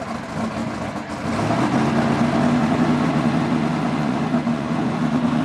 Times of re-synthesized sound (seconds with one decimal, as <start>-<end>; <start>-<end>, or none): 0.6-1.1; 2.6-5.4